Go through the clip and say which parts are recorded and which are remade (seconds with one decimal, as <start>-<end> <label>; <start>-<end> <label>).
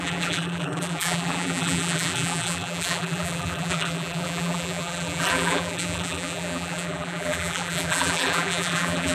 0.0-9.1 remade